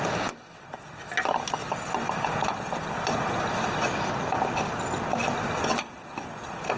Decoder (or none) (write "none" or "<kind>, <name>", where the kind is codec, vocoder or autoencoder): none